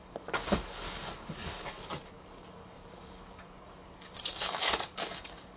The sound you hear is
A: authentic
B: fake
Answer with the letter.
B